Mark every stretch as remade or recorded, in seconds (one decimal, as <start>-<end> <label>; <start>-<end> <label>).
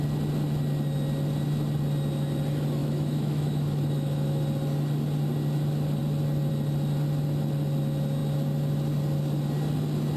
0.0-2.8 recorded; 2.8-4.4 remade; 4.4-10.2 recorded